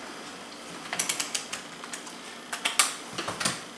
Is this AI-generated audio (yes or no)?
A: no